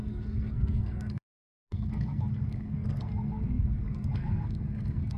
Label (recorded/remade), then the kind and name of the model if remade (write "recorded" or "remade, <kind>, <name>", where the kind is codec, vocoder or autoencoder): remade, codec, SNAC